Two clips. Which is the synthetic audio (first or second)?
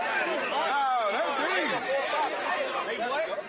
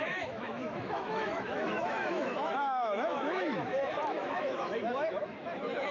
second